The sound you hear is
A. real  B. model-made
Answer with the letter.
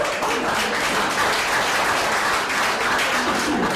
A